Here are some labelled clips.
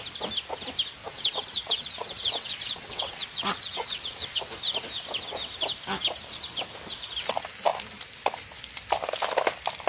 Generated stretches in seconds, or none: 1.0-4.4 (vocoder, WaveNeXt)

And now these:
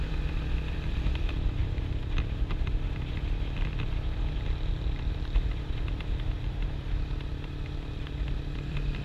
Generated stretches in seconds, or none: 0.0-1.6 (vocoder, BigVGAN v2); 5.1-9.0

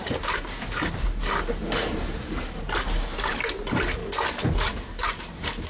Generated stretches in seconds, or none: 0.0-4.0 (vocoder, BigVGAN v2); 4.7-5.7

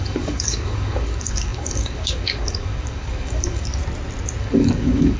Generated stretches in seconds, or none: 0.0-3.7 (codec, DAC); 4.4-5.2

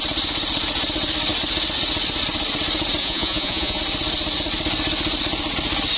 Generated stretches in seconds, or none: 3.0-3.8 (vocoder, Vocos)

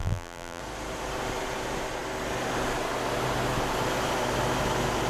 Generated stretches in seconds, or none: 0.0-0.6 (vocoder, BigVGAN v2)

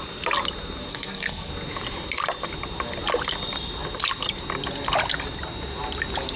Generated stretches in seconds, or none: 0.9-1.5 (codec, SNAC)

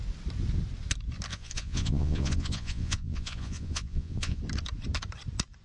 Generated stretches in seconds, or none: 1.3-4.4 (vocoder, Vocos)